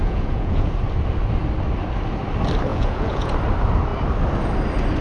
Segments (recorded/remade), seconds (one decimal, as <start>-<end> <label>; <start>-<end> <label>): 0.0-0.8 remade; 0.8-2.7 recorded; 2.7-3.3 remade; 3.3-5.0 recorded